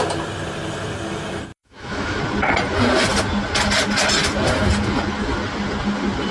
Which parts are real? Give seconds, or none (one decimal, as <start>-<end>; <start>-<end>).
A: 0.0-1.5; 2.2-6.3